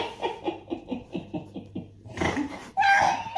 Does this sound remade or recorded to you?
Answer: recorded